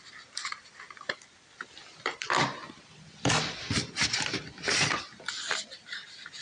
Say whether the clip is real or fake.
fake